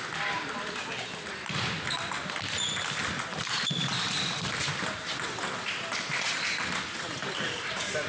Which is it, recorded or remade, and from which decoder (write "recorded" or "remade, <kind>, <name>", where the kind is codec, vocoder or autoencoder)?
remade, vocoder, BigVGAN v2